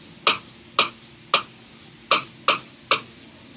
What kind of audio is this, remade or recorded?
recorded